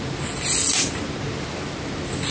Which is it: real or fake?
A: real